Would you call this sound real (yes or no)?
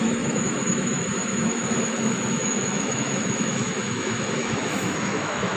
no